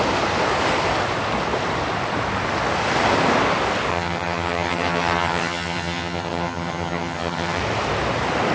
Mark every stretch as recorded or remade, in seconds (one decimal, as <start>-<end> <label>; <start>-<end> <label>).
0.0-3.9 recorded; 3.9-7.6 remade; 7.6-8.5 recorded